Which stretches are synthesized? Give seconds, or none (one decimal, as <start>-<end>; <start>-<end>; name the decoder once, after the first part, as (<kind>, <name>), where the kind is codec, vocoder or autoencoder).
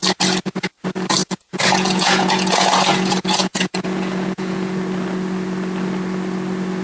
1.2-4.8 (vocoder, Vocos)